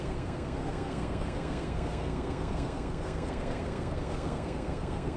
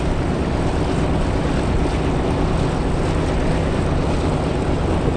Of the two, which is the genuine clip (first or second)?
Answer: second